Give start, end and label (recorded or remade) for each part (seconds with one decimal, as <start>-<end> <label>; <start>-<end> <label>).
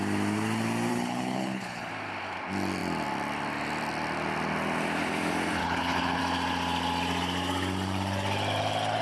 0.0-0.9 recorded; 0.9-1.9 remade; 1.9-5.6 recorded; 5.6-6.2 remade; 6.2-9.0 recorded